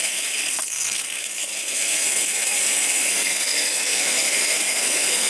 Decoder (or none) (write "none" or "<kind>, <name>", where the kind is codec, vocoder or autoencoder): codec, SNAC